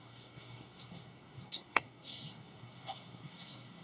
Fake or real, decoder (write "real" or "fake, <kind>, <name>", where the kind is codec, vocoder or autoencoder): fake, codec, SNAC